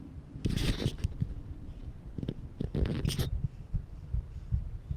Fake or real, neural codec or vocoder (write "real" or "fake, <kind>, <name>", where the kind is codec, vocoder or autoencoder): real